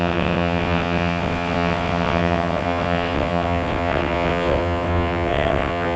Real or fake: fake